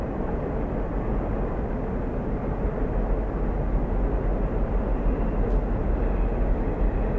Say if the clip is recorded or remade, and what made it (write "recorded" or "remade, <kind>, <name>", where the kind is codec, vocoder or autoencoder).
recorded